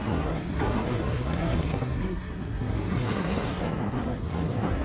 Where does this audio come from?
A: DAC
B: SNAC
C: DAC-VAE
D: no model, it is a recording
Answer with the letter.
B